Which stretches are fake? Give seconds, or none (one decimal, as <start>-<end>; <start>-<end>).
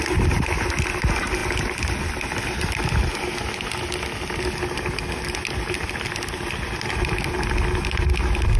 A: none